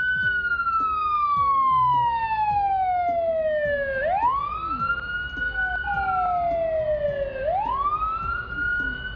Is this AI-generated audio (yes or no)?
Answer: no